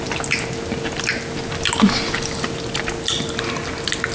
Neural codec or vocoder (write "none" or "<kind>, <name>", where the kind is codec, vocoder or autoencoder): none